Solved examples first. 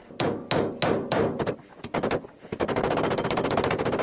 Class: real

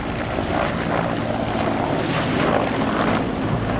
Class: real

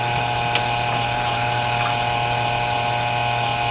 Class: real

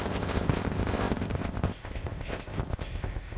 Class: fake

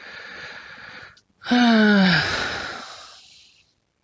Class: real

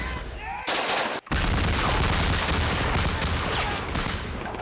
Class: real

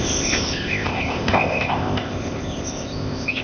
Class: fake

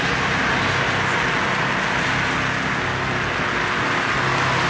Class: real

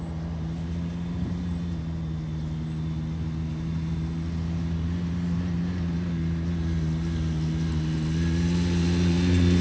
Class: real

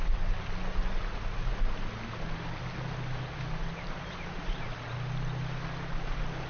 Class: real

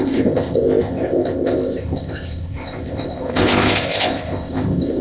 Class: fake